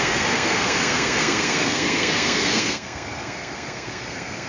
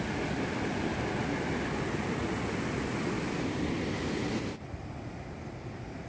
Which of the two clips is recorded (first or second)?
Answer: second